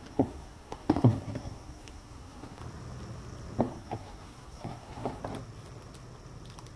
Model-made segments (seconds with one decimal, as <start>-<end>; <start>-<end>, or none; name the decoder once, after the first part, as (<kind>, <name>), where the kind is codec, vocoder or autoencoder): 0.0-2.6 (codec, SNAC); 3.6-5.2